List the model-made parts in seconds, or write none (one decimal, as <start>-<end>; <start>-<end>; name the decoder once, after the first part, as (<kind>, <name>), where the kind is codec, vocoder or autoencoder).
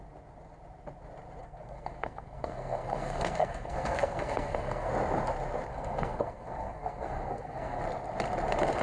1.4-4.9 (codec, SNAC); 5.7-7.8